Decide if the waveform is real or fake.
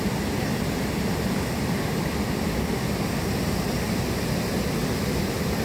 real